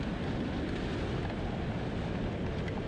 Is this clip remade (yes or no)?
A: yes